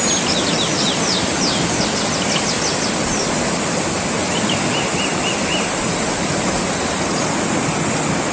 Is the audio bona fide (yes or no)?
yes